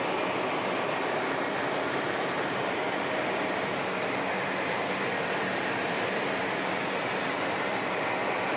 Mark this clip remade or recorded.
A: remade